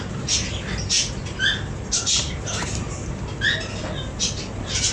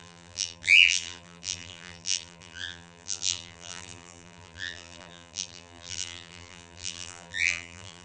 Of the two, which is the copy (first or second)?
second